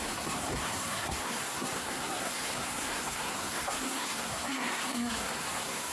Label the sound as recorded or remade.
remade